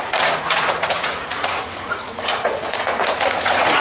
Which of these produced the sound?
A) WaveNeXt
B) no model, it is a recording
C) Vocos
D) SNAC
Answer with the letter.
C